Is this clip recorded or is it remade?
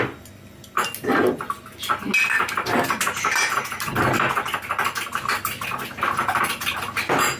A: recorded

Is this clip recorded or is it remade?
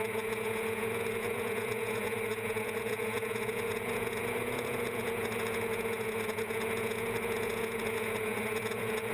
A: remade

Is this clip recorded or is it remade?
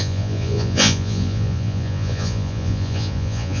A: remade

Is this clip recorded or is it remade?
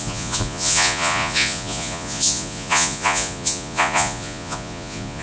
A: remade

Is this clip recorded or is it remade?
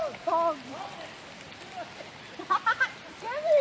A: recorded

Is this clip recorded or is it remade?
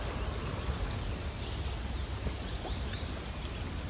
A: recorded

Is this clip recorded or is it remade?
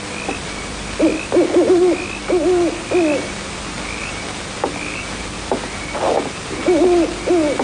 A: recorded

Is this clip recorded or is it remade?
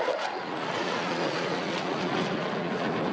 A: remade